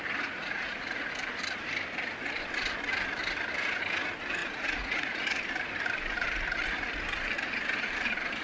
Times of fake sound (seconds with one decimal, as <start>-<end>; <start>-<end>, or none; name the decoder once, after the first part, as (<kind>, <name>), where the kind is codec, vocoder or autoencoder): 0.4-1.0 (vocoder, Vocos); 4.4-5.4